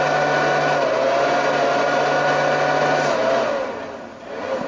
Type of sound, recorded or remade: recorded